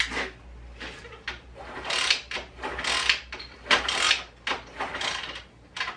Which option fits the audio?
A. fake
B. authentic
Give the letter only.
B